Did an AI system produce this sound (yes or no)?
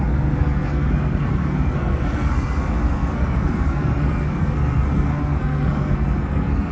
yes